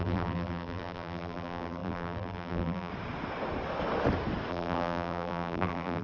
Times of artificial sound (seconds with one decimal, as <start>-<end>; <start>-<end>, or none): 0.0-2.9; 4.5-6.0